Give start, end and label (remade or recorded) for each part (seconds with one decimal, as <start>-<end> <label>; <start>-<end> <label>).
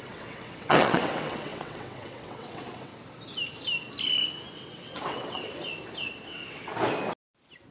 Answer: 0.0-2.9 remade; 2.9-4.5 recorded; 4.5-5.5 remade; 5.5-6.1 recorded; 6.1-6.7 remade; 6.7-7.7 recorded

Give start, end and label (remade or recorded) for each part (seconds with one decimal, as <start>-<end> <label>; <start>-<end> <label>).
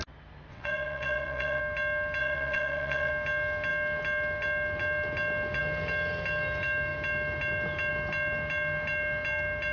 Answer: 0.0-0.5 recorded; 0.5-1.6 remade; 1.6-2.2 recorded; 2.2-3.1 remade; 3.1-9.7 recorded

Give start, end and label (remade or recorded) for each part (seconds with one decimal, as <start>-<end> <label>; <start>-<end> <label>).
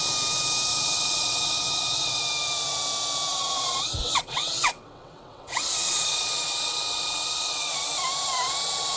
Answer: 0.0-0.7 recorded; 0.7-2.2 remade; 2.2-3.3 recorded; 3.3-7.9 remade; 7.9-9.0 recorded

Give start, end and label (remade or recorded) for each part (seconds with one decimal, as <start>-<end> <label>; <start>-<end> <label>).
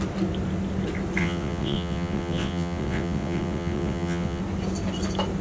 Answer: 0.0-1.2 recorded; 1.2-4.4 remade; 4.4-5.4 recorded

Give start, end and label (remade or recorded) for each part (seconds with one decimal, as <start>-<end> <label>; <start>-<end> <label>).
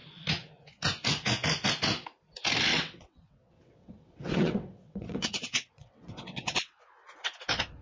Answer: 0.0-2.7 recorded; 2.7-6.8 remade; 6.8-7.8 recorded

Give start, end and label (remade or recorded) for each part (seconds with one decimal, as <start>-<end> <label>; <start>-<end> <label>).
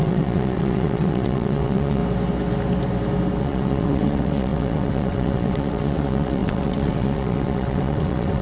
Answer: 0.0-2.0 remade; 2.0-3.4 recorded; 3.4-8.4 remade